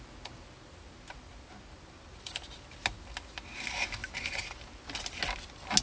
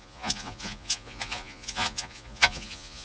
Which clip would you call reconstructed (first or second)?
second